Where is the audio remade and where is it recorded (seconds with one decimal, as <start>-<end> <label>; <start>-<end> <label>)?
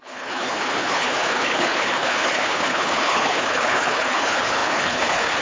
0.0-5.4 remade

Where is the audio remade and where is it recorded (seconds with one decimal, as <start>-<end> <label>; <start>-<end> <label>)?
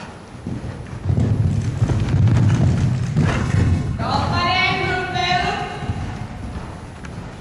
0.0-3.4 recorded; 3.4-4.0 remade; 4.0-7.4 recorded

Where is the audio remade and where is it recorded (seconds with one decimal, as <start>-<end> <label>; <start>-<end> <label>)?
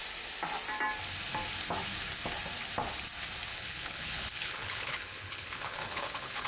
0.0-3.5 recorded; 3.5-6.5 remade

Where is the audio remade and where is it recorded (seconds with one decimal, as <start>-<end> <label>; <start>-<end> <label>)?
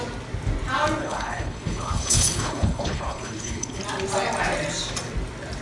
0.0-1.0 recorded; 1.0-3.8 remade; 3.8-5.6 recorded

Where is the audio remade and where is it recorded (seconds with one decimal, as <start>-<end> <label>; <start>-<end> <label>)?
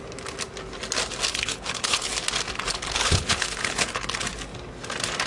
0.0-1.3 recorded; 1.3-2.1 remade; 2.1-2.7 recorded; 2.7-4.1 remade; 4.1-5.3 recorded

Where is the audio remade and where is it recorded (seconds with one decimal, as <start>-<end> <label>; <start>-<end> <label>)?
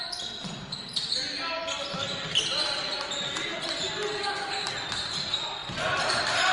0.0-6.5 recorded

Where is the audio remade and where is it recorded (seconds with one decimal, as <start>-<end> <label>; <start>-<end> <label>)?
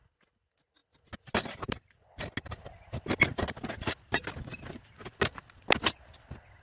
0.0-6.6 recorded